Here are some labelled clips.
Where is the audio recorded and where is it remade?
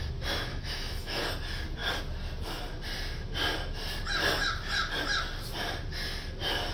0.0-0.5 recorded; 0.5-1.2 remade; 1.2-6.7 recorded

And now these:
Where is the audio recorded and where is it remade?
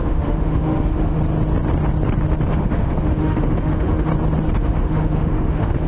0.0-1.2 remade; 1.2-2.5 recorded; 2.5-4.1 remade; 4.1-4.6 recorded; 4.6-5.9 remade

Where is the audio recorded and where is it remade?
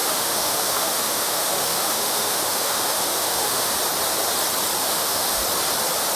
0.0-3.7 remade; 3.7-4.8 recorded; 4.8-5.4 remade; 5.4-6.2 recorded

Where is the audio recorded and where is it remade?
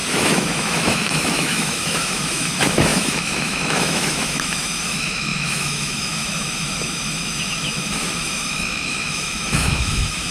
0.0-10.3 remade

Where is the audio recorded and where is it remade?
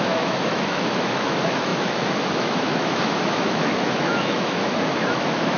0.0-5.6 remade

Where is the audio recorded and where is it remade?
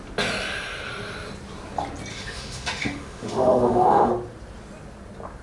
0.0-2.1 recorded; 2.1-4.1 remade; 4.1-5.4 recorded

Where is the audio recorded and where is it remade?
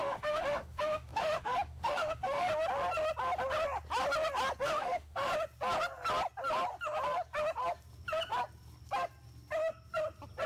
0.0-2.5 remade; 2.5-4.6 recorded; 4.6-5.3 remade; 5.3-10.5 recorded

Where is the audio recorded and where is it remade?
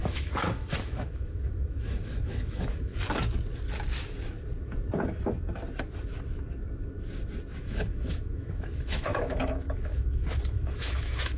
0.0-2.9 remade; 2.9-7.6 recorded; 7.6-11.4 remade